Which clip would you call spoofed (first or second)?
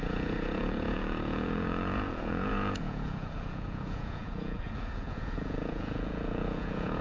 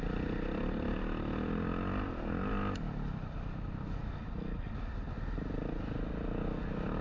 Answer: first